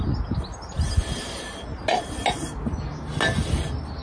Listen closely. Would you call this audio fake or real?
real